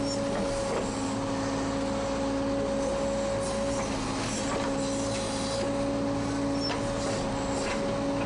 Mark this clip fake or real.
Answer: real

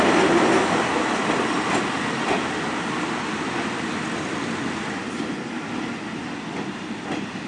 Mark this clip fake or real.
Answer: real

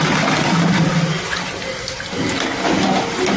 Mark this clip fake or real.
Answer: real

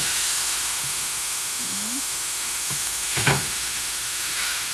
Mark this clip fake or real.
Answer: fake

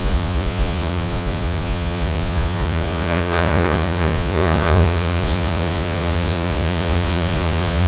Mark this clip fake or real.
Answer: fake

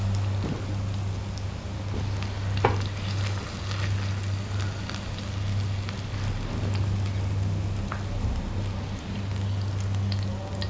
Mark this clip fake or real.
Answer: real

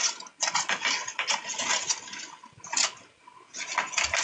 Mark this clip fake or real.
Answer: real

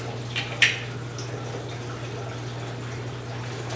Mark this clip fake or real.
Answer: real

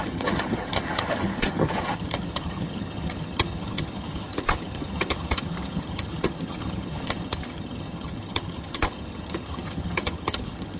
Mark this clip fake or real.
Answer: fake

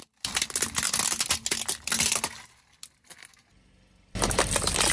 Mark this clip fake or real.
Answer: real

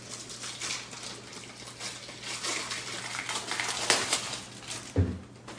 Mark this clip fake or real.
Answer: real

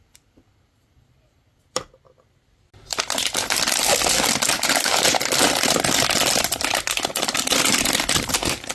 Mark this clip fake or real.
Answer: real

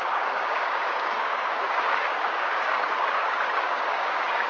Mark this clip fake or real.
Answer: fake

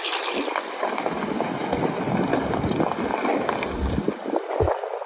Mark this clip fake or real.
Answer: real